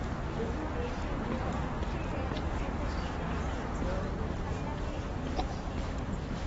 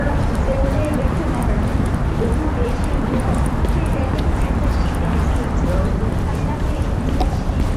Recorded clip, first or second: first